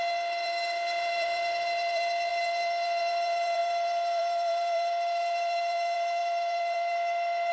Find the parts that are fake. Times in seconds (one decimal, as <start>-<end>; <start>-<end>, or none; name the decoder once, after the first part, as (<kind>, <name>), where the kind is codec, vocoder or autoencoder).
0.0-7.5 (vocoder, BigVGAN v2)